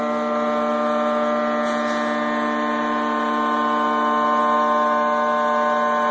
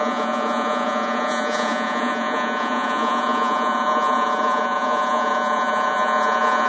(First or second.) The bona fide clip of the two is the first